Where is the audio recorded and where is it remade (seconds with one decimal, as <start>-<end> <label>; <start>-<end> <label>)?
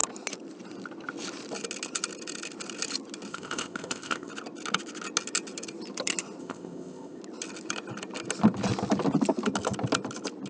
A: 0.0-3.3 recorded; 3.3-4.3 remade; 4.3-6.4 recorded; 6.4-7.2 remade; 7.2-10.5 recorded